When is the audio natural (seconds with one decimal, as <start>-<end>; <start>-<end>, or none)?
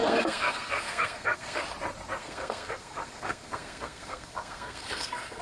1.6-2.2